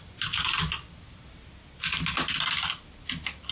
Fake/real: real